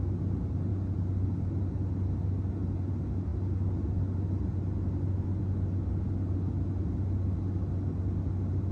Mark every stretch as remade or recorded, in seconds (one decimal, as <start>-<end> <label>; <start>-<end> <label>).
0.0-8.7 recorded